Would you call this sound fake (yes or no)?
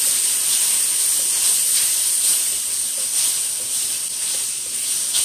no